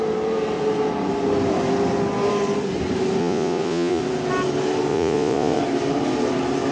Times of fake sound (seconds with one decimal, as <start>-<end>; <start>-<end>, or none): 3.2-4.0; 4.9-5.6